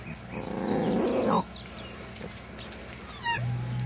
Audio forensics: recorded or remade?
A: recorded